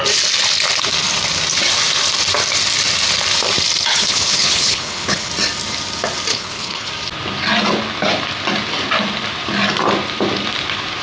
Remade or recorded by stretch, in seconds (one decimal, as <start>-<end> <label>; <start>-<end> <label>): 0.0-3.9 recorded; 3.9-5.3 remade; 5.3-6.3 recorded; 6.3-6.9 remade; 6.9-11.0 recorded